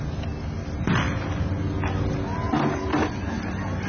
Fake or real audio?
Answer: real